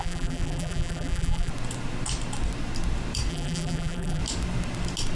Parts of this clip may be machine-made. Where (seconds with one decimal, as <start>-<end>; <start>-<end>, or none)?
0.0-1.5; 3.3-4.2